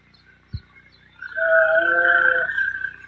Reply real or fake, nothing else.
real